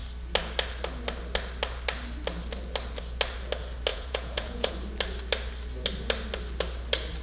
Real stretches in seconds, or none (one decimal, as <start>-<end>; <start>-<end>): 0.0-3.9; 4.7-7.2